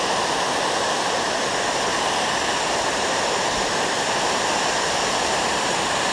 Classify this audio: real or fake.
real